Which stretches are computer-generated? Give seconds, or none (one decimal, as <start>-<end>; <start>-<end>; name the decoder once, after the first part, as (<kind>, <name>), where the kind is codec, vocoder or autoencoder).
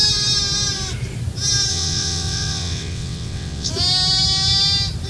1.7-3.7 (vocoder, WaveNeXt)